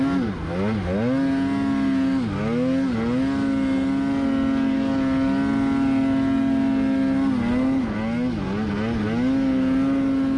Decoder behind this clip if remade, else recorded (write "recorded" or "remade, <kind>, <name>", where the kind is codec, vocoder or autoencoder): recorded